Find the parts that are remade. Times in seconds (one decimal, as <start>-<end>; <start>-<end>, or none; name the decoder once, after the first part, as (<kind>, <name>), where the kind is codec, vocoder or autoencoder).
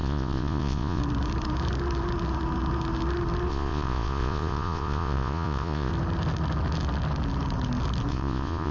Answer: 0.0-1.0 (vocoder, Vocos); 3.5-5.9; 8.1-8.7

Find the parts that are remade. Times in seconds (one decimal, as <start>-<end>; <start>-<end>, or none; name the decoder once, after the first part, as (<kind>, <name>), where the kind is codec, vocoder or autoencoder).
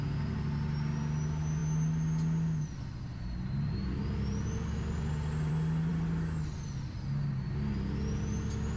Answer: none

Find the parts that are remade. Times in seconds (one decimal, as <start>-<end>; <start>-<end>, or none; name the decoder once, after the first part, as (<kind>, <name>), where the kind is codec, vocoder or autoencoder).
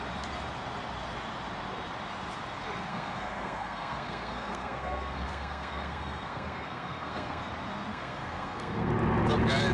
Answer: 2.9-7.4 (codec, SNAC); 7.9-8.9